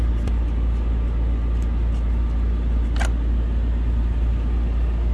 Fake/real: real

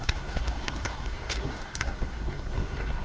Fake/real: fake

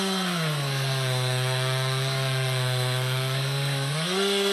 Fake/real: fake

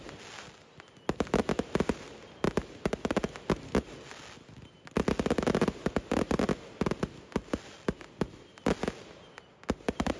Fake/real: real